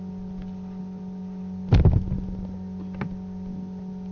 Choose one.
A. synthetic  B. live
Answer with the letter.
B